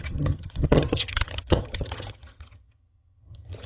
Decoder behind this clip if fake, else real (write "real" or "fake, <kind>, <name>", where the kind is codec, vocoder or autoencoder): fake, vocoder, HiFi-GAN